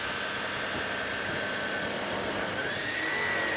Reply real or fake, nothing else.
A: real